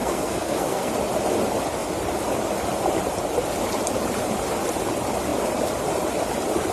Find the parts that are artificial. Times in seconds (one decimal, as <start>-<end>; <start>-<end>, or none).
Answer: 0.0-0.9